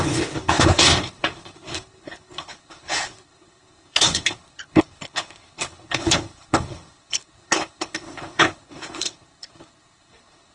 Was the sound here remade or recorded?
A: remade